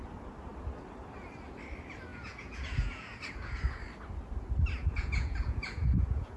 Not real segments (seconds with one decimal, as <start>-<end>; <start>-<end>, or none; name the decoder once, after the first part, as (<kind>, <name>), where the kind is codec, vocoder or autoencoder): 2.1-3.8 (vocoder, Vocos); 4.8-6.4